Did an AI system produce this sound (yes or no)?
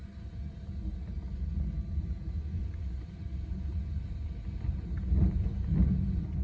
no